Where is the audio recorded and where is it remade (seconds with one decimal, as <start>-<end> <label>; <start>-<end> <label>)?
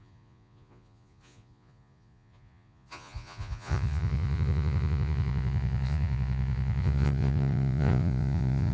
0.0-8.7 remade